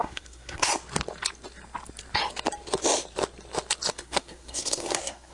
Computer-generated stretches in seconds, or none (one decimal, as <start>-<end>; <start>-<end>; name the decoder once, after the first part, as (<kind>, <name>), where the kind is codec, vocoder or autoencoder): 0.0-0.7 (codec, SNAC); 3.9-5.3